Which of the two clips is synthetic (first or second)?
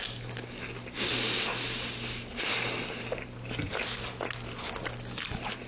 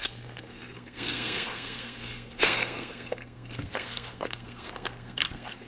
second